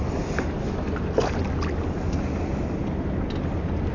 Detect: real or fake real